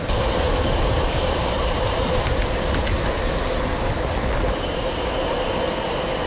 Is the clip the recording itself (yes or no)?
yes